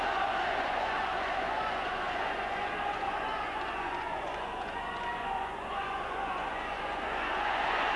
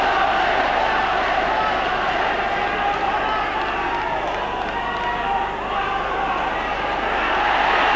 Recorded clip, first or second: second